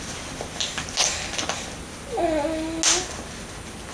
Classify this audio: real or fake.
real